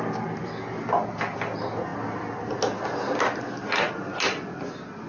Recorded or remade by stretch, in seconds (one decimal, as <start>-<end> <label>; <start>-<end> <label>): 0.0-5.1 recorded